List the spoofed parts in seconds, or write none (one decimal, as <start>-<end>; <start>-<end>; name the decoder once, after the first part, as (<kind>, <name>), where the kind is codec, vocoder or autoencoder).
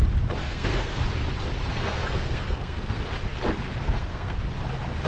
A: 0.4-1.0 (codec, SNAC); 1.7-3.0; 3.8-4.4